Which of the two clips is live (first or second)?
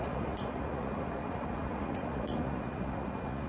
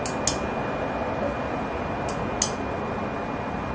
second